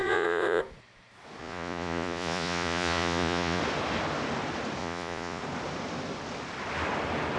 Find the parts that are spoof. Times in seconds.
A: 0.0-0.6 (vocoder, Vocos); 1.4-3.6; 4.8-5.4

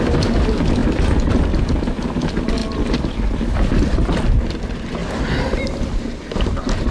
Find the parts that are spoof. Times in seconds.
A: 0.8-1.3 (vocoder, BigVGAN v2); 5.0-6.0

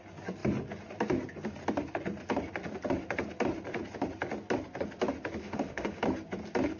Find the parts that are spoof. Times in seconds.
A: 5.4-6.0 (autoencoder, DAC-VAE)

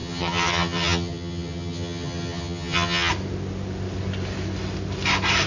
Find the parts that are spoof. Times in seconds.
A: 0.0-3.1 (vocoder, HiFi-GAN)

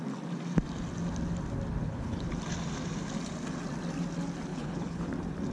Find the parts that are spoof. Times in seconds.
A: 1.8-2.3 (codec, HILCodec); 4.5-5.1

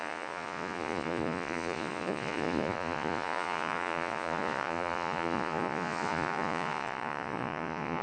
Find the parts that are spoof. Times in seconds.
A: 0.0-8.0 (vocoder, Vocos)

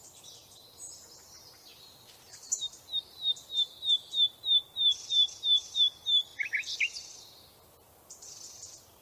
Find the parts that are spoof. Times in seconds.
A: none